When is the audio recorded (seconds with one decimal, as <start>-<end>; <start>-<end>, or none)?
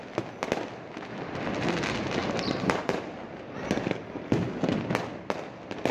0.0-2.2; 3.0-5.9